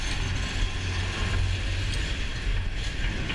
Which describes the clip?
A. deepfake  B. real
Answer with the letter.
B